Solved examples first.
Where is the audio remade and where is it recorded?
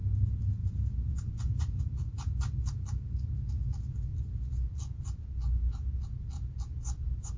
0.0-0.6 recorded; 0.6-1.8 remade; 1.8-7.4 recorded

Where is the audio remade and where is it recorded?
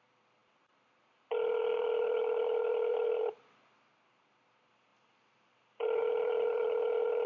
0.0-4.9 recorded; 4.9-6.0 remade; 6.0-7.3 recorded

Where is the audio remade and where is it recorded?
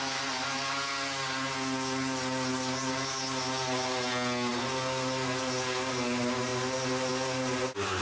0.0-8.0 recorded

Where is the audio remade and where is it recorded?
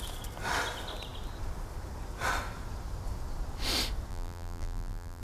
0.0-4.1 recorded; 4.1-5.2 remade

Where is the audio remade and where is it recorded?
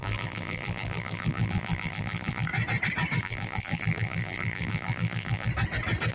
0.0-2.5 remade; 2.5-3.2 recorded; 3.2-5.5 remade; 5.5-6.1 recorded